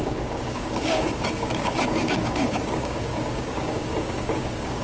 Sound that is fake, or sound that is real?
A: fake